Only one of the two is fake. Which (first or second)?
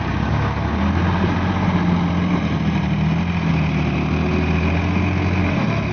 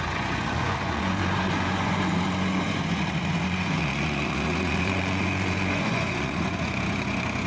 second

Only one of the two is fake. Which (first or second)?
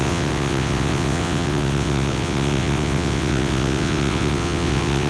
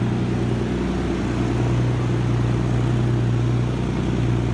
first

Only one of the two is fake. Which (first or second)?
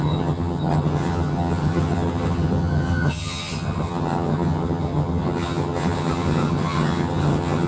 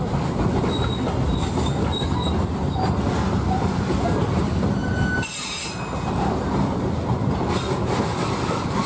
first